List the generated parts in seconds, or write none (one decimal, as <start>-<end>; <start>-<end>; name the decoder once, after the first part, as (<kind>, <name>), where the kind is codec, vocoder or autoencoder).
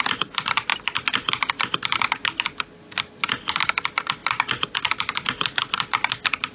none